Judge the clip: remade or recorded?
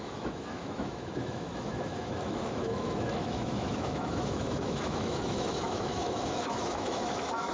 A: remade